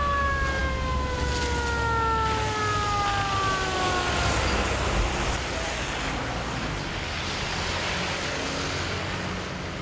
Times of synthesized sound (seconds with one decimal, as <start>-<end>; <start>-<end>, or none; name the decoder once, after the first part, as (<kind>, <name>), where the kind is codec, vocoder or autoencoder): none